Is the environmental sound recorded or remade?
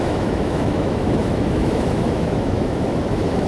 remade